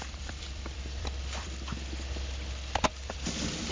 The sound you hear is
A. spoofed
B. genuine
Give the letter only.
A